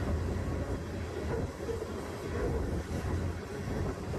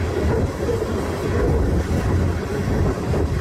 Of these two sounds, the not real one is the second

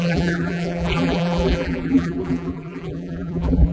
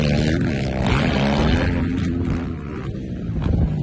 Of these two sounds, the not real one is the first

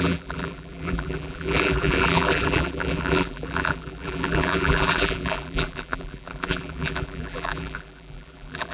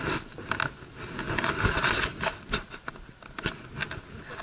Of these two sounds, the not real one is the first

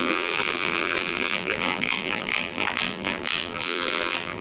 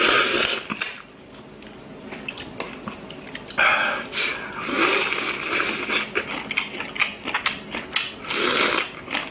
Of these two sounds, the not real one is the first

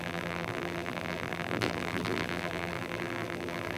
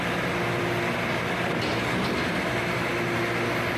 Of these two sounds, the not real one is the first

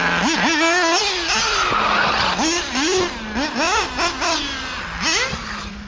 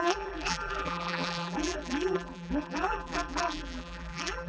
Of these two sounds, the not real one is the second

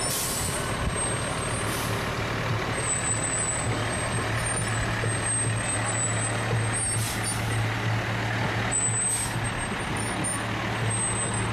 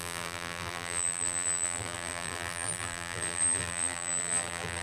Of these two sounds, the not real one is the second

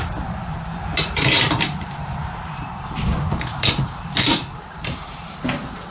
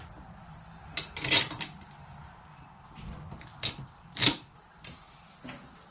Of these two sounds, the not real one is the first